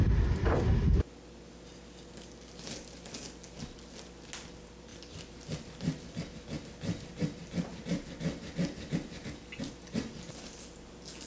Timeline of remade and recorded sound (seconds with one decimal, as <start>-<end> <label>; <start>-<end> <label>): 0.0-11.3 recorded